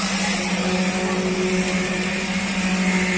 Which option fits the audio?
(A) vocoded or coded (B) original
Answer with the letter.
B